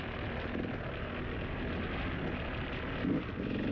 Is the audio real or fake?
real